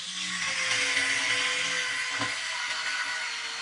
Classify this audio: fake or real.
real